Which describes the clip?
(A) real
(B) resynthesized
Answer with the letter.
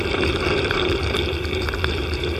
B